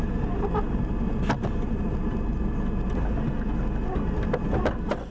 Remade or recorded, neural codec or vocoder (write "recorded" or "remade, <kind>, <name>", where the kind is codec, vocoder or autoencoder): recorded